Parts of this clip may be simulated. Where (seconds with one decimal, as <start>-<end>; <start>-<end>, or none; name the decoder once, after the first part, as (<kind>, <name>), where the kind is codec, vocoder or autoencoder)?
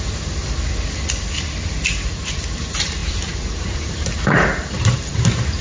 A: 0.0-0.4 (vocoder, BigVGAN v2); 1.8-5.6